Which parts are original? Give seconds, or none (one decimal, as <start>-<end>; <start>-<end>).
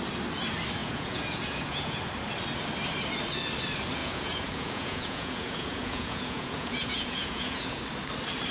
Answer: 0.0-0.8; 2.0-4.0; 7.8-8.5